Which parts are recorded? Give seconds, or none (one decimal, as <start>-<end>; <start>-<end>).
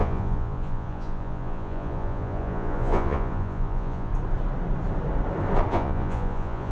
4.1-5.7